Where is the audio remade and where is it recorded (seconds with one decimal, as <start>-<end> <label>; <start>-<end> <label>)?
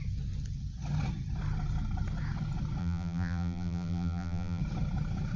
0.0-2.8 recorded; 2.8-4.6 remade; 4.6-5.4 recorded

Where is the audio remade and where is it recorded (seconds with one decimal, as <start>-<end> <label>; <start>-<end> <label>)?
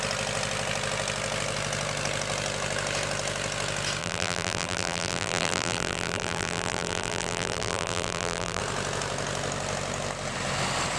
0.0-4.0 recorded; 4.0-8.6 remade; 8.6-11.0 recorded